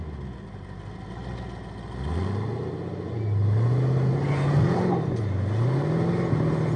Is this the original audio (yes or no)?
yes